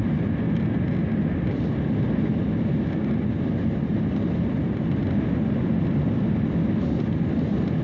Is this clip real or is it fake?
real